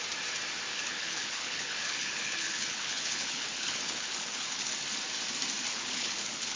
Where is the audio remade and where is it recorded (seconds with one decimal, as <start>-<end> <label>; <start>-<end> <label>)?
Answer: 0.0-0.7 recorded; 0.7-4.7 remade; 4.7-5.7 recorded; 5.7-6.6 remade